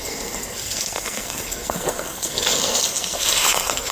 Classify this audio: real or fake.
fake